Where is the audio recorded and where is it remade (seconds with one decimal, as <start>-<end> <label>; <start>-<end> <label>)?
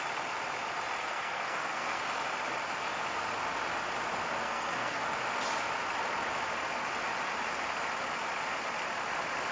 0.0-1.0 recorded; 1.0-2.0 remade; 2.0-4.4 recorded; 4.4-5.0 remade; 5.0-9.5 recorded